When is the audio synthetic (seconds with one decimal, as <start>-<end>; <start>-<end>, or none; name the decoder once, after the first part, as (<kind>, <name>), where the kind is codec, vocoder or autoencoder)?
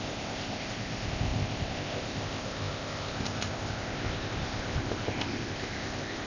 0.0-6.3 (codec, ZipCodec)